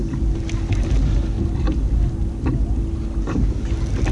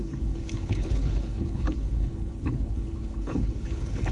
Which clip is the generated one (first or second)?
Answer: second